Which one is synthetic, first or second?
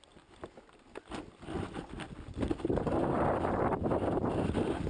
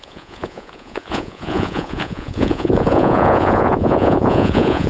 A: second